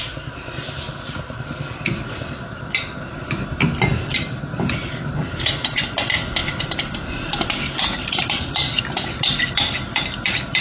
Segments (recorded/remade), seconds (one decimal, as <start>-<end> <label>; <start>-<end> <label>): 0.0-4.8 recorded; 4.8-5.9 remade; 5.9-6.4 recorded; 6.4-8.8 remade; 8.8-10.6 recorded